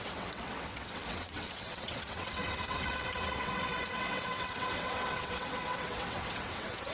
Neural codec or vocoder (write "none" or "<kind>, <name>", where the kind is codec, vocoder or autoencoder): vocoder, WaveNeXt